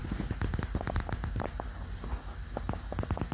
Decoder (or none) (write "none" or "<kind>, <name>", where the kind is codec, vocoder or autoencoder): none